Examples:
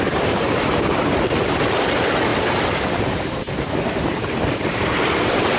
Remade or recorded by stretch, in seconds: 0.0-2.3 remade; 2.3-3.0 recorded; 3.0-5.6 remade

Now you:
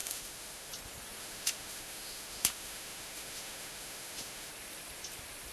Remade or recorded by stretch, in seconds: 0.0-0.7 remade; 0.7-1.2 recorded; 1.2-4.5 remade; 4.5-5.5 recorded